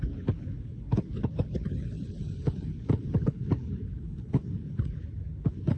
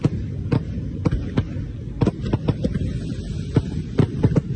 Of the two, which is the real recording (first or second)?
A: second